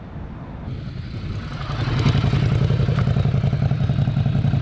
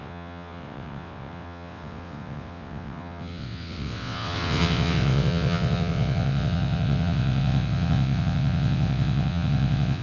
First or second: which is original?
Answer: first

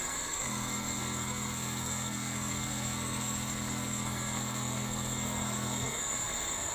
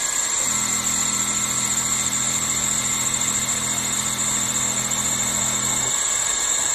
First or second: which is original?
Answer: second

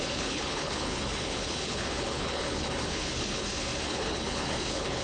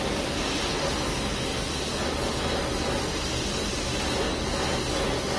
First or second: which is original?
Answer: second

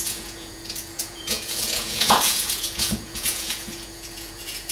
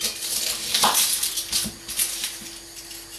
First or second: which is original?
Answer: second